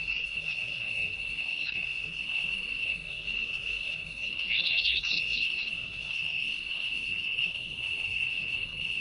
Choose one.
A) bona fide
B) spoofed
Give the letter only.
B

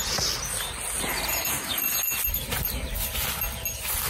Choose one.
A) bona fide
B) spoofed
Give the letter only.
A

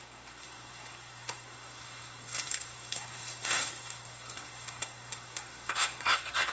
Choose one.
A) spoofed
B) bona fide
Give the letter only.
A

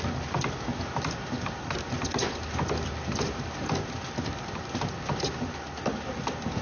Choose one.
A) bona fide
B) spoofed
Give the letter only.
A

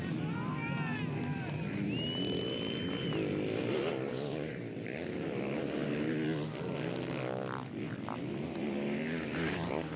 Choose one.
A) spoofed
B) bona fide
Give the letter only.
B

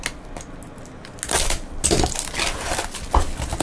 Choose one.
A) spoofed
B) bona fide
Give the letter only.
B